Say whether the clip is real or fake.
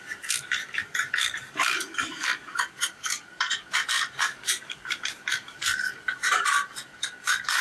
fake